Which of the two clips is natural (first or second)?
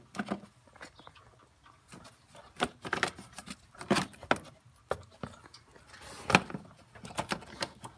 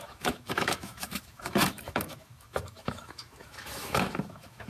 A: first